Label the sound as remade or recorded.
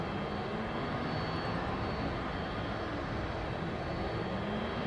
recorded